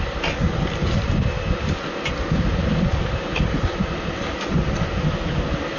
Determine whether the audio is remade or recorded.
recorded